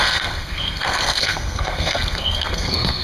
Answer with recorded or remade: remade